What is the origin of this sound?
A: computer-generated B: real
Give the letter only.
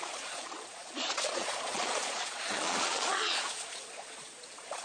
A